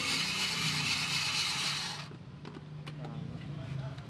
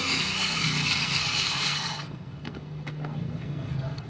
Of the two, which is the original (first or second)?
first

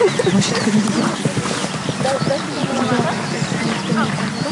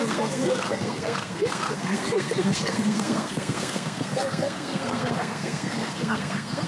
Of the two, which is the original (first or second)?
first